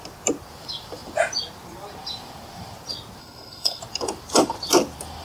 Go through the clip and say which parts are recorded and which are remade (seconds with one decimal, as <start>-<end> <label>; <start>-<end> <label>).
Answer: 0.0-3.2 recorded; 3.2-3.8 remade; 3.8-5.2 recorded